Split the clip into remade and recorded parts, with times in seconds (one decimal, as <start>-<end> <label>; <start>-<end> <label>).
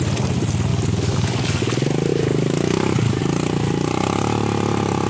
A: 0.0-0.7 recorded; 0.7-1.6 remade; 1.6-2.1 recorded; 2.1-3.2 remade; 3.2-5.1 recorded